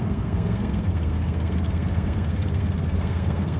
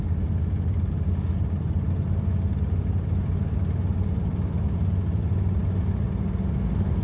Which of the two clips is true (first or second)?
second